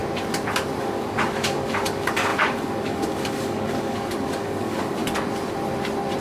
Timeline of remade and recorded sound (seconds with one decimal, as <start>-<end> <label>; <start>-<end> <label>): 0.0-0.8 recorded; 0.8-5.0 remade; 5.0-6.2 recorded